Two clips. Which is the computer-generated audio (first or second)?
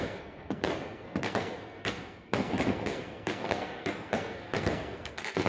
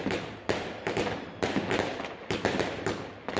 first